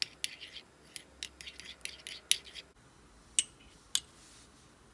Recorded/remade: recorded